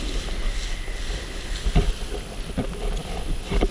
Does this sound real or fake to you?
real